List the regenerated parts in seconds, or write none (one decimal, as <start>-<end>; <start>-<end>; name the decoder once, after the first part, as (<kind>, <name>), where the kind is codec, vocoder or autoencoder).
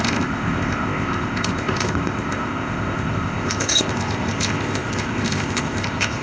0.0-6.2 (codec, ZipCodec)